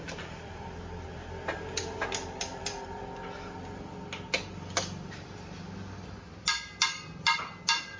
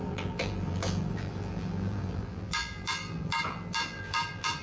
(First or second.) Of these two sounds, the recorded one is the first